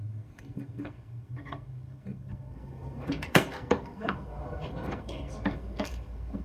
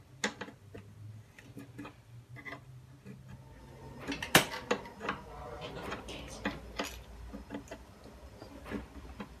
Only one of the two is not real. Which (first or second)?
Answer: first